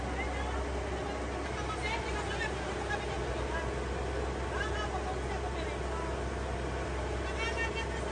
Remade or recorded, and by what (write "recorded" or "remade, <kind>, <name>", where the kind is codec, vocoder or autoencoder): recorded